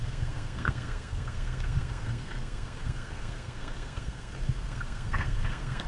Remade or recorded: remade